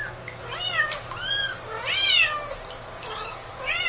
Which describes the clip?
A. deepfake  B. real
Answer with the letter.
B